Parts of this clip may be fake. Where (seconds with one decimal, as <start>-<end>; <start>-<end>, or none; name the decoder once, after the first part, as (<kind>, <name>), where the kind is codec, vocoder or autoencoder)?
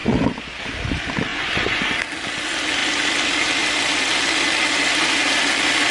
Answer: 1.3-1.8 (vocoder, Vocos)